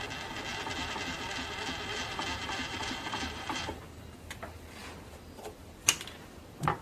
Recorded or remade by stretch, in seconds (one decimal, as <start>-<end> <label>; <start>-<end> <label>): 0.0-2.8 recorded; 2.8-3.6 remade; 3.6-6.8 recorded